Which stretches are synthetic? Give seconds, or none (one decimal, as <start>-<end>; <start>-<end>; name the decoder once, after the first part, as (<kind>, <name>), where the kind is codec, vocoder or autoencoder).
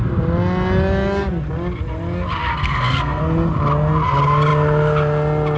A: 2.5-3.2 (codec, SNAC)